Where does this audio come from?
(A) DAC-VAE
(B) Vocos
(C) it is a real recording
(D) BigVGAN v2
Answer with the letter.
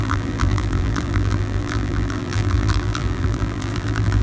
D